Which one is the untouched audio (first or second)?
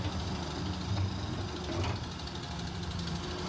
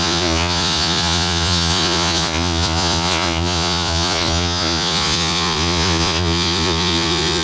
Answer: first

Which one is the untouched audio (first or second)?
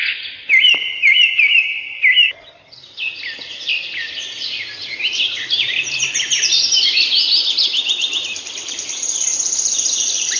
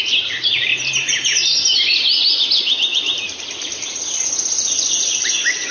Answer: second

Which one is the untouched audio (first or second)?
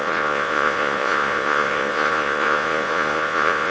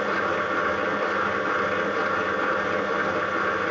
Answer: second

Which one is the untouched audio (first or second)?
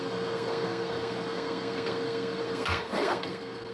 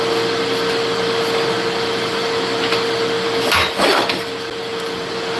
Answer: second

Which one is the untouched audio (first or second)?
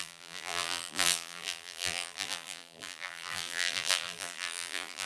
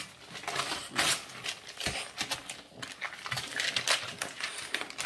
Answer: second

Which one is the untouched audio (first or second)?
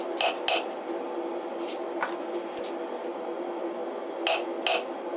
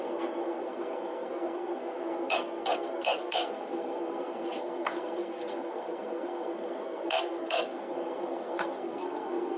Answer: first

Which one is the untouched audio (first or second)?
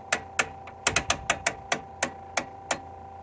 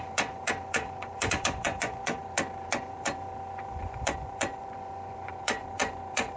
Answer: first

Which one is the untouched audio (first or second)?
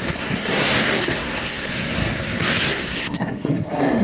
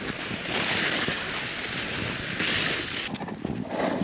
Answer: second